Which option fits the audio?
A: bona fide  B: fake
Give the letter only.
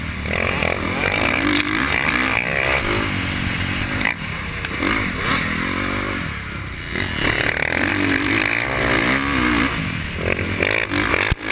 A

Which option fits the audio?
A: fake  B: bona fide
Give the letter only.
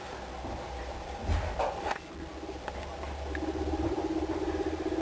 B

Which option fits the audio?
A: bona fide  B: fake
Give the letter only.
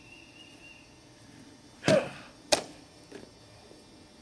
A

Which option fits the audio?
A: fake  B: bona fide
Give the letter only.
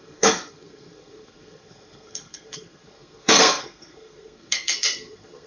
A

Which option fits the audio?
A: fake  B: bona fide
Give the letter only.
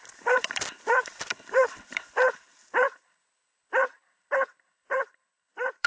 A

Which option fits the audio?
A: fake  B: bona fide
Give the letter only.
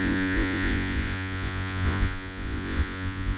A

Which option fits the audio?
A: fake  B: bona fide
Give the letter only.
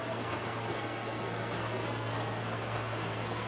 A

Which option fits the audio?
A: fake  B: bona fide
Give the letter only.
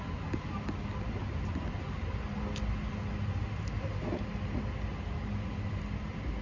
B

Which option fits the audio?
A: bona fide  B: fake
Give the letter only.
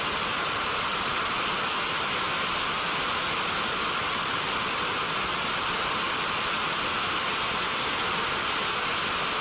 A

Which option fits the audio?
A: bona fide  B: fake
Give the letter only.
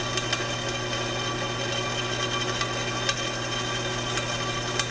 A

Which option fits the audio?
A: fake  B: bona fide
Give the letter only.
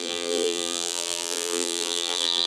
A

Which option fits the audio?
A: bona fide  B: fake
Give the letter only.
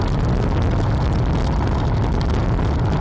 A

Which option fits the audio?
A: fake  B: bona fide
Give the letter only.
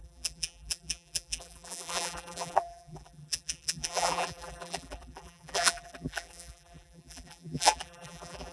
A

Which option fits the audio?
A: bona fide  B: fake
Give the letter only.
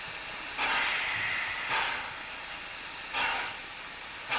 A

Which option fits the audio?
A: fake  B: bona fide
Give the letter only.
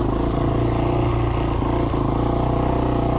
B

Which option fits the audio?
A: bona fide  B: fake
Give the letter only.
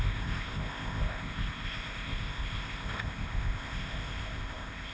B